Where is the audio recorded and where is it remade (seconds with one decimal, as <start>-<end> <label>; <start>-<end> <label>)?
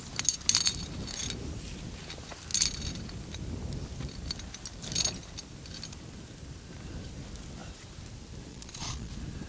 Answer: 0.0-8.5 recorded; 8.5-9.1 remade; 9.1-9.5 recorded